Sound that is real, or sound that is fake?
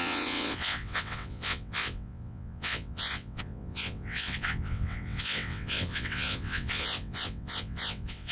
fake